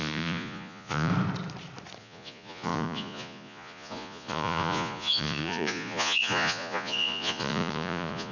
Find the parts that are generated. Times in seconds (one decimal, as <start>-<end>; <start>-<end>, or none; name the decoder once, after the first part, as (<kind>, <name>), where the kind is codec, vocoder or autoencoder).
0.0-1.1 (vocoder, Vocos); 2.0-8.3